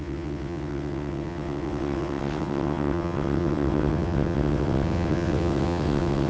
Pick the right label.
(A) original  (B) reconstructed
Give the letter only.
B